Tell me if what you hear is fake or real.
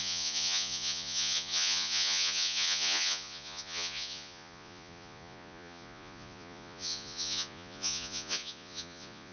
fake